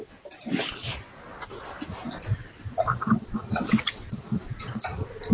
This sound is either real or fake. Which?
real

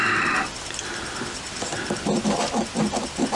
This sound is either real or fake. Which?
real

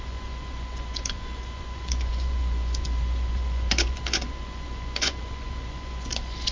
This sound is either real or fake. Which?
fake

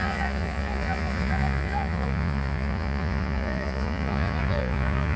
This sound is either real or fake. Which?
fake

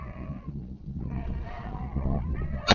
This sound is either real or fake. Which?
fake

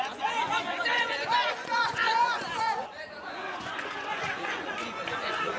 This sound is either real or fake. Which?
fake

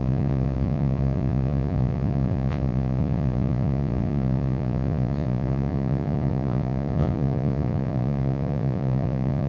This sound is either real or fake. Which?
fake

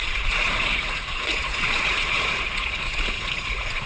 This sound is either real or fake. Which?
fake